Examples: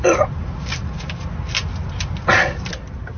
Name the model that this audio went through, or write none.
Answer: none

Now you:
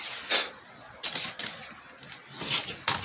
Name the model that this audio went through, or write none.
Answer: none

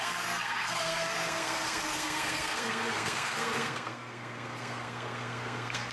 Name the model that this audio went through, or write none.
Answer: codec, SNAC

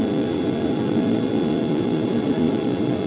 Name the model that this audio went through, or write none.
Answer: vocoder, Vocos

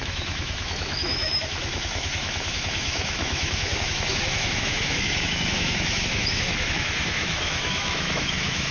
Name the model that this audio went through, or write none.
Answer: autoencoder, DAC-VAE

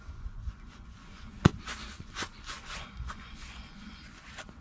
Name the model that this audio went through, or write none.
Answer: vocoder, Vocos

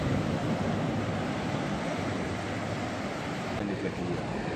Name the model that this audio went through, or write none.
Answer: none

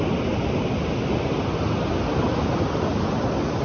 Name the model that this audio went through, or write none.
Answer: none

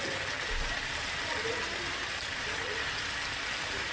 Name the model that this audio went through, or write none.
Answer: none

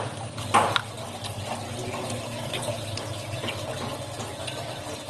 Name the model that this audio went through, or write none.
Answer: none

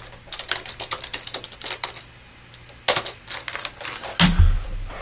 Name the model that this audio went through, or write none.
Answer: none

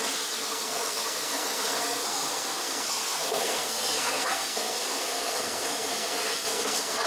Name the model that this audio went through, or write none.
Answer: codec, SNAC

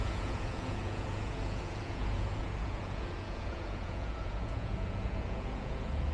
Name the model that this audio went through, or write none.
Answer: vocoder, Vocos